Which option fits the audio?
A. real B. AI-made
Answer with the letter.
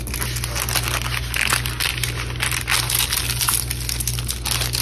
A